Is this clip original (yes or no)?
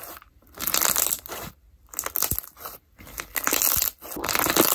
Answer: yes